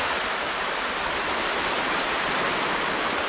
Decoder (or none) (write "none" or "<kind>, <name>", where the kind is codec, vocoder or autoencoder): none